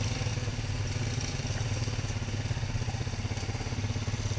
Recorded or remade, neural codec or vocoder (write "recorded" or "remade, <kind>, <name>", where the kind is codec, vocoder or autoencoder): recorded